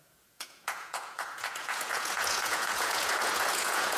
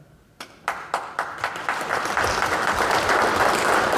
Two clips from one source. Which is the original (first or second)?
second